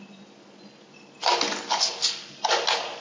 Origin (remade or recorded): recorded